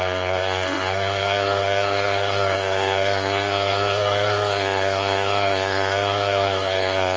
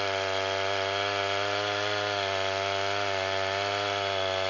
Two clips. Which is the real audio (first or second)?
second